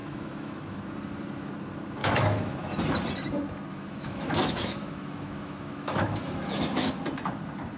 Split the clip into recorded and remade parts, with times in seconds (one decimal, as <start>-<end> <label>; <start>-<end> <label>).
0.0-0.8 remade; 0.8-2.0 recorded; 2.0-2.8 remade; 2.8-3.7 recorded; 3.7-6.9 remade; 6.9-7.8 recorded